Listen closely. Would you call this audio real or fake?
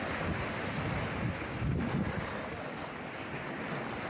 real